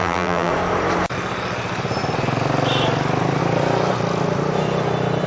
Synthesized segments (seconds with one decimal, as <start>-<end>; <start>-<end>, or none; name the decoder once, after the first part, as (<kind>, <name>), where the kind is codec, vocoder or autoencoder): 0.0-0.5 (vocoder, BigVGAN v2)